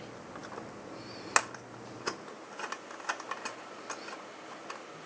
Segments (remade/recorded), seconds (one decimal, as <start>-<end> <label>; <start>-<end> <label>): 0.0-5.1 recorded